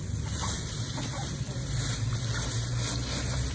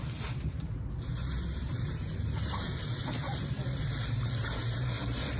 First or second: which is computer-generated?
second